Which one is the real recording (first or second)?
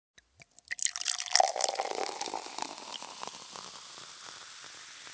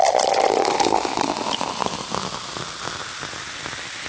second